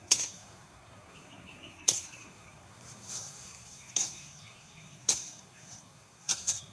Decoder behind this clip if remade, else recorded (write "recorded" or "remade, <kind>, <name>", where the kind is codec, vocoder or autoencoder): remade, codec, SNAC